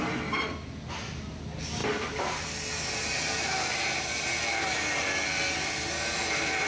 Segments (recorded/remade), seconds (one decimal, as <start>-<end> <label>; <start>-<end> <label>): 0.0-6.7 recorded